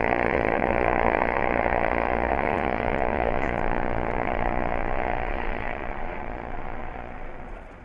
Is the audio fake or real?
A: fake